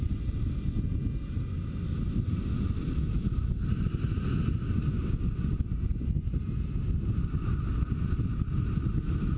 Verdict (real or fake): real